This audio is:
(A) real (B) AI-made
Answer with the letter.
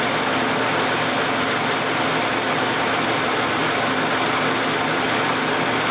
A